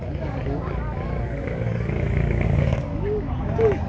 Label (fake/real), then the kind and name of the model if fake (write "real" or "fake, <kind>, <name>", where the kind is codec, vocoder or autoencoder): fake, codec, DAC